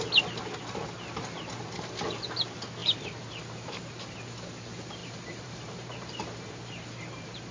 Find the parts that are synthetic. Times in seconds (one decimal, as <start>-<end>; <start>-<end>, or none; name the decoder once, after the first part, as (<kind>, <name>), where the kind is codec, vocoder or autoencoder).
2.8-3.7 (vocoder, BigVGAN v2); 5.0-7.5